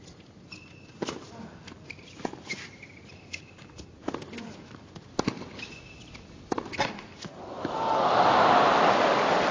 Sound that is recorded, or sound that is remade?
recorded